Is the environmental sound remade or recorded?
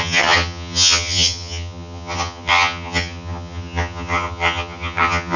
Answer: remade